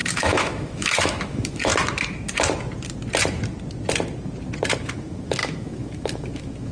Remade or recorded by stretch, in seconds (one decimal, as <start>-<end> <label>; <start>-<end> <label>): 0.0-1.7 remade; 1.7-4.8 recorded; 4.8-6.7 remade